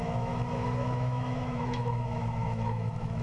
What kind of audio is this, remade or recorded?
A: remade